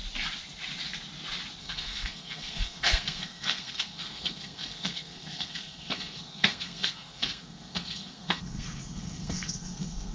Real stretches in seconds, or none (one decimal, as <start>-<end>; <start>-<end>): 0.0-1.6